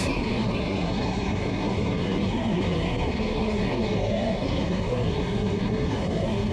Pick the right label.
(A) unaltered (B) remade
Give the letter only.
B